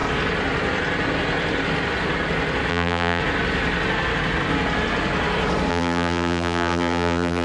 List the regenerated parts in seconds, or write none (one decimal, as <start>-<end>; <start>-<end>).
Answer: 2.7-3.2; 5.7-7.4